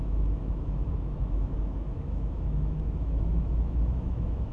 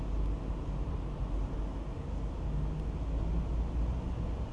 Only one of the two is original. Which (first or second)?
second